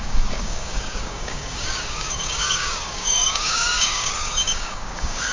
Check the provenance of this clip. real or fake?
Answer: fake